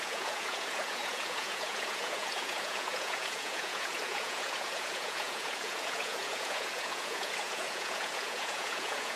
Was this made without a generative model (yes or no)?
no